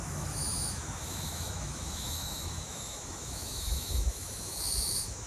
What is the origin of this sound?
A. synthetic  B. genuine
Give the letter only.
A